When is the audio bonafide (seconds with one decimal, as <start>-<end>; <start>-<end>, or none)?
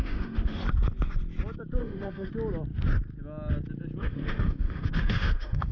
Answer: 0.6-1.8; 2.3-4.0